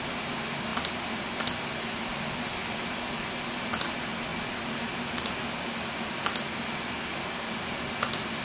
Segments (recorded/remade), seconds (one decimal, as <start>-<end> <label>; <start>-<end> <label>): 0.0-8.4 recorded